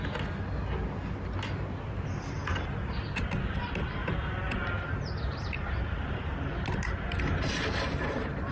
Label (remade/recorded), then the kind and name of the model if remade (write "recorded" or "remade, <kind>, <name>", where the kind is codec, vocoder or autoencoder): recorded